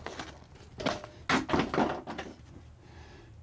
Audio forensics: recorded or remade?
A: recorded